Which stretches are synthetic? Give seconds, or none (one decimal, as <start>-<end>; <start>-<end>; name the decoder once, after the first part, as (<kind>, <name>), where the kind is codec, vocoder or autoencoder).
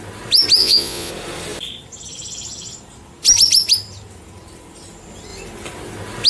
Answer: 0.6-1.1 (vocoder, Vocos)